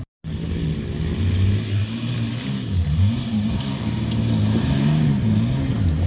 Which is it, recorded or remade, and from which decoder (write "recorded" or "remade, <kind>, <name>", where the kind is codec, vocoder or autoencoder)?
recorded